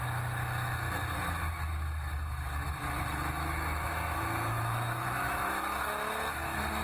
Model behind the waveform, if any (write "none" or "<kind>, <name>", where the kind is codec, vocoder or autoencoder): autoencoder, DAC-VAE